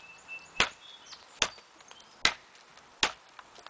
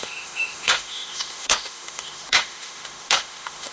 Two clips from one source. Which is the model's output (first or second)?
second